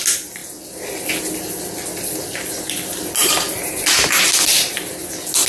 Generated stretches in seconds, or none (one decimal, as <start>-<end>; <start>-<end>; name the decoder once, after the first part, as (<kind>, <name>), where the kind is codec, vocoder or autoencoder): 3.2-5.0 (vocoder, BigVGAN v2)

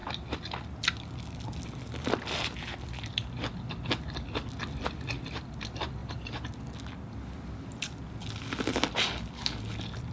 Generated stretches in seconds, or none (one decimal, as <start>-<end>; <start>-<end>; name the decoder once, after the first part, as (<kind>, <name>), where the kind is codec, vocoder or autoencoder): 6.0-6.6 (vocoder, BigVGAN v2)

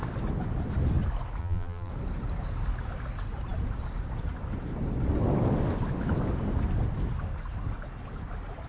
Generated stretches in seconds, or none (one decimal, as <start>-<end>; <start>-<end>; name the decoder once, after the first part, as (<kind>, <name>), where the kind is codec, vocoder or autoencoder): 1.4-1.9 (vocoder, BigVGAN v2)

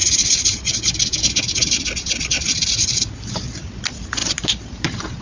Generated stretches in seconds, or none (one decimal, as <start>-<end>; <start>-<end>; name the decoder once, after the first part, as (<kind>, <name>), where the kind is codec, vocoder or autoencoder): 0.0-3.1 (vocoder, BigVGAN v2); 4.2-5.2

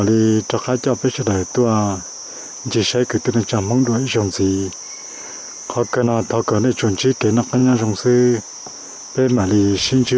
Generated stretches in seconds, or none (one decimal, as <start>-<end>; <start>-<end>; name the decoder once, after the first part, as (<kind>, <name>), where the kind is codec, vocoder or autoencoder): none